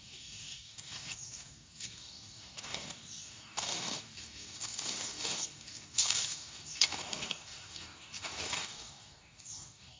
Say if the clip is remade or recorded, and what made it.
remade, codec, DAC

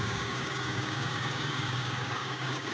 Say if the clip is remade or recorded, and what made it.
remade, codec, DAC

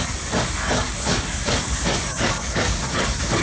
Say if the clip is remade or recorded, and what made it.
remade, codec, DAC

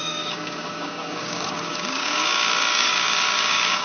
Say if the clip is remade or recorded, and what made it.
remade, codec, DAC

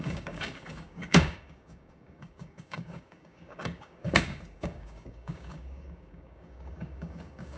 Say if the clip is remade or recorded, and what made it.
remade, codec, DAC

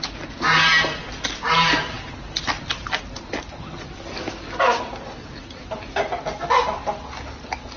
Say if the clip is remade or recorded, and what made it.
recorded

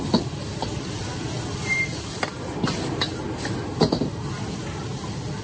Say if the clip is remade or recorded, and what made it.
recorded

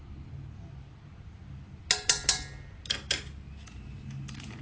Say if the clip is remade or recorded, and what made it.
recorded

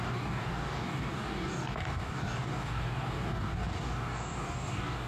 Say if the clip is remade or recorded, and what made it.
remade, codec, DAC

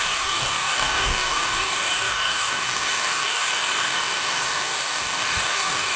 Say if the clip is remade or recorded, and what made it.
remade, codec, DAC